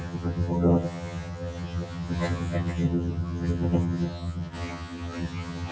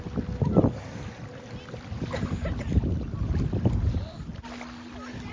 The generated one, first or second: first